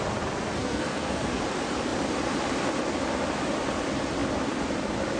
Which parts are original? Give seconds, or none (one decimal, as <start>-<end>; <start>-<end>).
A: 0.0-0.6; 1.4-5.2